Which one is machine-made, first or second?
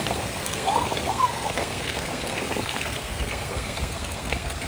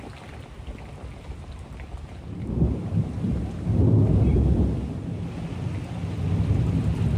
first